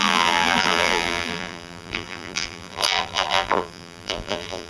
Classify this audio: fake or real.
fake